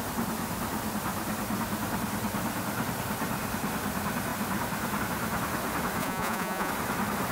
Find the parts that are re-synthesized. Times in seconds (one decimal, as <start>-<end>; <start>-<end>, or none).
6.0-6.7

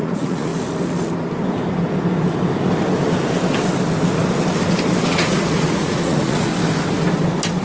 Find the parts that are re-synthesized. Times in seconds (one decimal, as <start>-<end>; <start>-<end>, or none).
0.0-0.5; 5.1-6.5

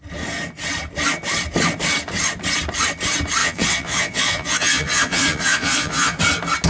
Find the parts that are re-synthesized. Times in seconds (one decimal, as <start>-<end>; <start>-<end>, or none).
3.4-6.2

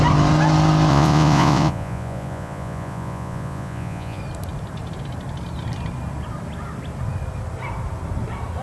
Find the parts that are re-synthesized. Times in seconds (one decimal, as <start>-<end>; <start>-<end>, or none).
0.9-4.2

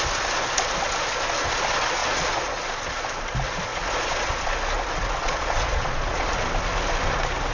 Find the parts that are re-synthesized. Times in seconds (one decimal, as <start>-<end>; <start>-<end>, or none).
2.0-2.6; 3.7-4.5; 5.2-6.3

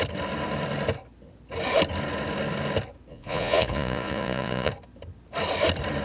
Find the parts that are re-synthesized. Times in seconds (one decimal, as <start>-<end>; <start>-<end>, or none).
3.1-4.7

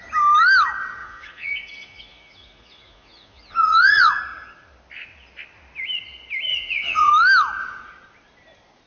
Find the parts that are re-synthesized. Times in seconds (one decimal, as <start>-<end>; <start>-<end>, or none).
1.0-4.2; 6.5-7.1

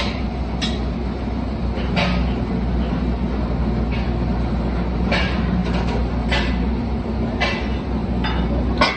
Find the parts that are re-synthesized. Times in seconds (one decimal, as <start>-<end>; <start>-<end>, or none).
none